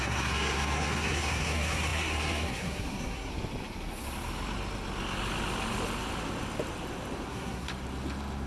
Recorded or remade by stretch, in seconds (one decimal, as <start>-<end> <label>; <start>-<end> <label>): 0.0-3.3 remade; 3.3-7.3 recorded; 7.3-7.7 remade; 7.7-8.5 recorded